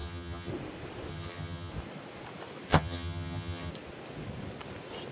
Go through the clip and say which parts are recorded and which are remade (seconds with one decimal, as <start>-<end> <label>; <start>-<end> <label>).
0.0-0.5 remade; 0.5-1.1 recorded; 1.1-1.7 remade; 1.7-2.7 recorded; 2.7-3.7 remade; 3.7-5.1 recorded